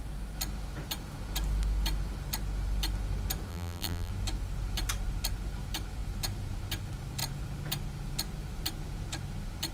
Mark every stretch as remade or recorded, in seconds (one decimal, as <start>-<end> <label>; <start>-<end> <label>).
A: 0.0-3.5 recorded; 3.5-4.1 remade; 4.1-9.7 recorded